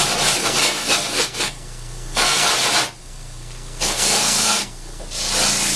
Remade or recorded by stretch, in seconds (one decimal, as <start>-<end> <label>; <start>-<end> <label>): 0.0-0.4 recorded; 0.4-2.5 remade; 2.5-3.0 recorded; 3.0-5.0 remade; 5.0-5.8 recorded

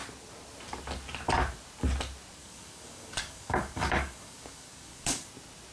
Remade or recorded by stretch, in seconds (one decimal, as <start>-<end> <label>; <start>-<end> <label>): 0.0-2.4 recorded; 2.4-5.3 remade; 5.3-5.7 recorded

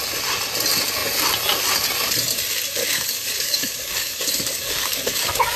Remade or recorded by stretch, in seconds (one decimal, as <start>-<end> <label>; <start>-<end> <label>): 0.0-2.8 recorded; 2.8-5.6 remade

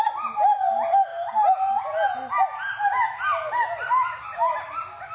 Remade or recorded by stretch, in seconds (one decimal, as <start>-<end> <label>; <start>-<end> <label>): 0.0-5.1 recorded

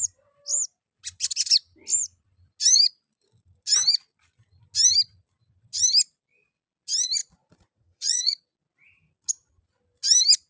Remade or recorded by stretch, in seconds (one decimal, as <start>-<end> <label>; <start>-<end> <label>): 0.0-7.2 recorded; 7.2-8.4 remade; 8.4-10.5 recorded

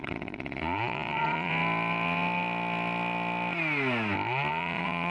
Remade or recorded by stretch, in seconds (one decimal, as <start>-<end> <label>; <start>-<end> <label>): 0.0-1.5 remade; 1.5-4.5 recorded; 4.5-5.1 remade

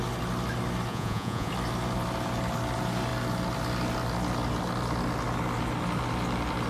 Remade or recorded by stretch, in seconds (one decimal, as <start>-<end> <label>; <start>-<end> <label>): 0.0-0.9 recorded; 0.9-1.5 remade; 1.5-6.7 recorded